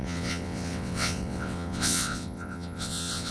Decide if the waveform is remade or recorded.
remade